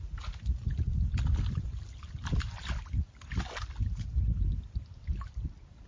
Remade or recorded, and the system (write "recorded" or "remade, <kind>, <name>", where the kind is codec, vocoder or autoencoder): recorded